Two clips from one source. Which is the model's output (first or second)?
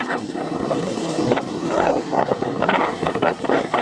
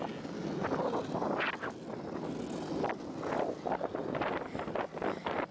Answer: first